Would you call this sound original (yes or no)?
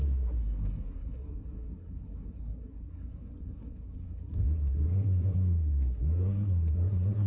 no